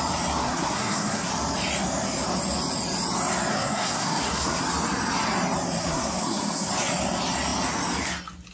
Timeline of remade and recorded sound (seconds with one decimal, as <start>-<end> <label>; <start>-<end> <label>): 0.0-0.4 recorded; 0.4-1.3 remade; 1.3-3.5 recorded; 3.5-4.6 remade; 4.6-5.8 recorded; 5.8-6.7 remade; 6.7-8.5 recorded